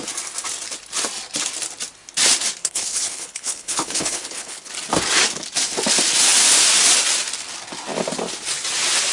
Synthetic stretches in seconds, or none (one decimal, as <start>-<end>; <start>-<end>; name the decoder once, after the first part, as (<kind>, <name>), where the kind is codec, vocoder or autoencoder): 2.6-4.7 (codec, HILCodec)